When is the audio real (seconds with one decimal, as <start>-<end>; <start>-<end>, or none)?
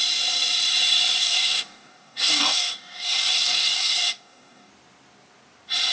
0.0-1.2; 4.7-5.9